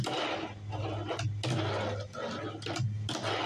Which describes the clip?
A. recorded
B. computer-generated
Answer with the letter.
A